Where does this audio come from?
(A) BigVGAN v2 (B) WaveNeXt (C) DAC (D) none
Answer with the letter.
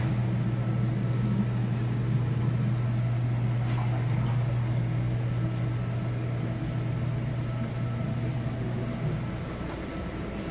D